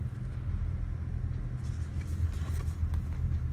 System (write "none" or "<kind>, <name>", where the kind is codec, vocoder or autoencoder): none